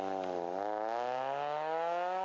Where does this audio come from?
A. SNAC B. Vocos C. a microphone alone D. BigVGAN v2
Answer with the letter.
C